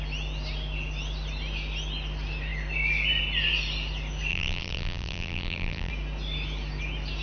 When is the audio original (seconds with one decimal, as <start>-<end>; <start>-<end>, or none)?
0.0-4.3; 5.9-7.2